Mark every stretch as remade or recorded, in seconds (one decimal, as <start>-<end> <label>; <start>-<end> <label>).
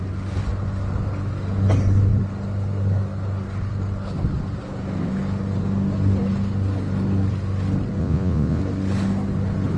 0.0-8.0 recorded; 8.0-8.6 remade; 8.6-9.8 recorded